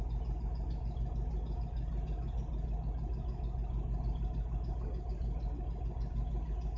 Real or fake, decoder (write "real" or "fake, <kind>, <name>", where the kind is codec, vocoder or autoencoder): real